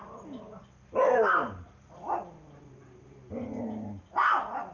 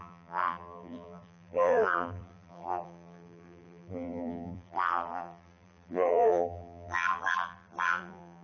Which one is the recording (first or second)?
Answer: first